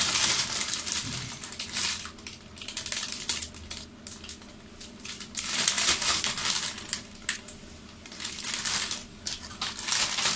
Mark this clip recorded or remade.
recorded